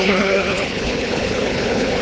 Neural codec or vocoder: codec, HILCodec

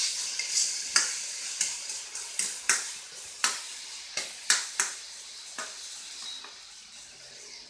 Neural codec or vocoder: none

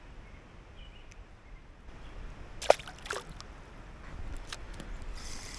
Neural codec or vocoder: none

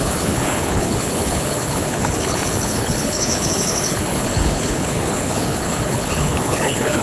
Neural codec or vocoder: codec, HILCodec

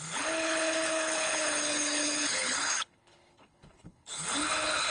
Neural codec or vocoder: codec, HILCodec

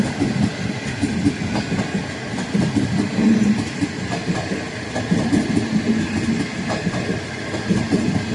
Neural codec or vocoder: none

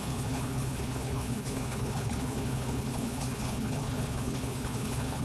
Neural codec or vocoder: codec, HILCodec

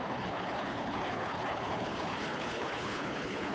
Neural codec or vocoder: codec, HILCodec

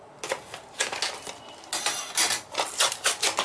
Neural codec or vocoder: none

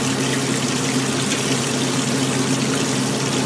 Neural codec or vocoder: none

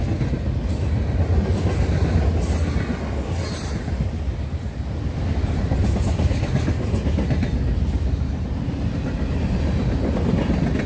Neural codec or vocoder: none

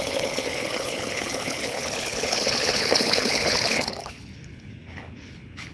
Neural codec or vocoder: codec, HILCodec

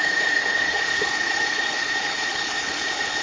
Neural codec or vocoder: codec, HILCodec